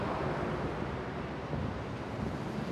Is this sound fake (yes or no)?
no